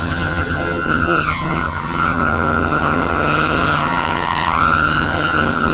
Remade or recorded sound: remade